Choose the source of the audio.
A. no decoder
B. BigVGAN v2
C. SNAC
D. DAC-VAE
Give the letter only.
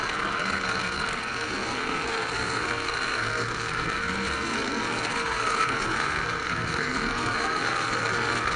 C